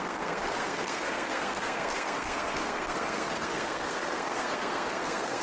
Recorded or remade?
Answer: remade